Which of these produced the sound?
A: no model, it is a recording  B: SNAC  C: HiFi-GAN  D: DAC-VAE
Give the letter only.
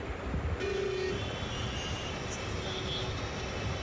A